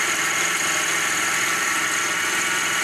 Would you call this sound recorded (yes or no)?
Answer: no